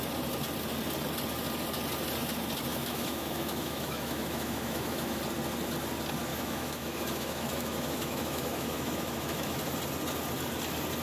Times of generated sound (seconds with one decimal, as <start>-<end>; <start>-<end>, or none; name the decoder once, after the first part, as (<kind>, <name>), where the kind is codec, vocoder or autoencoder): 2.7-5.2 (autoencoder, DAC-VAE); 6.3-9.6